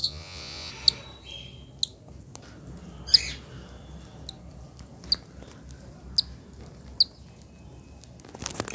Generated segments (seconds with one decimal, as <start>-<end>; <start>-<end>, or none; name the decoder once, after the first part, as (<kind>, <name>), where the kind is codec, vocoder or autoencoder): 0.0-0.7 (vocoder, Vocos)